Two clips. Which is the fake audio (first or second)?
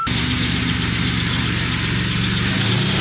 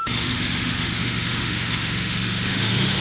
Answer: second